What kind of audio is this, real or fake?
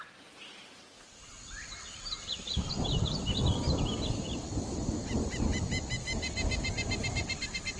real